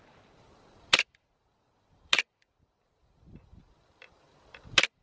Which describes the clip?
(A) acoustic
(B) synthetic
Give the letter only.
B